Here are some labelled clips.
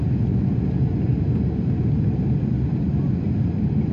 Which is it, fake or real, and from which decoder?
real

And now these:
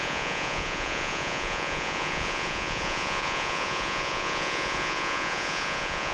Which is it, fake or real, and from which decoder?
fake, vocoder, Vocos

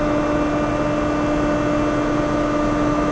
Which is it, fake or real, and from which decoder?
real